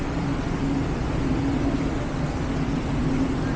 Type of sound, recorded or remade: recorded